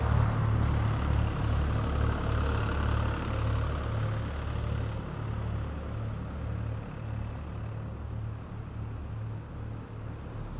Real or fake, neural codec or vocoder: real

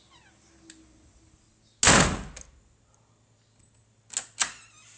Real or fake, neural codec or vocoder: real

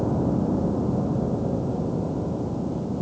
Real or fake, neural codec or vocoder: real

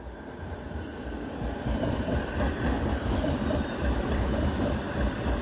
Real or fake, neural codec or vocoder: fake, vocoder, BigVGAN v2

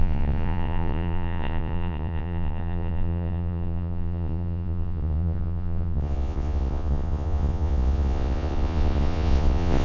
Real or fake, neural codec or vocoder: fake, vocoder, Vocos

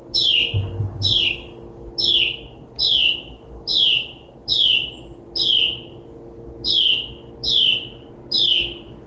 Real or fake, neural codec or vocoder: real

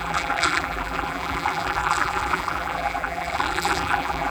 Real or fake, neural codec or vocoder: fake, vocoder, BigVGAN v2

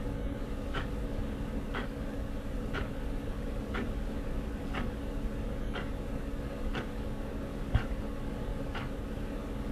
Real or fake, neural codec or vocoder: fake, codec, DAC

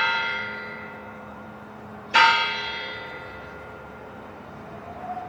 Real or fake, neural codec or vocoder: fake, vocoder, BigVGAN v2